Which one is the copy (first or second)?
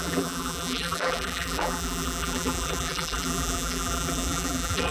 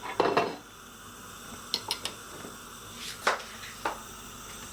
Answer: first